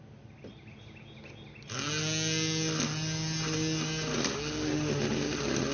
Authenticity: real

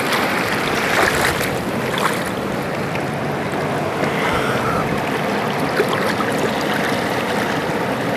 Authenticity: real